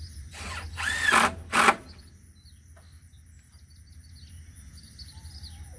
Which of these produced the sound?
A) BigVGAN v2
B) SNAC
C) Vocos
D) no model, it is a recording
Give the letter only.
D